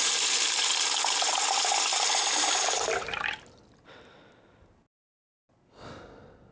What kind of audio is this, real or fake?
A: real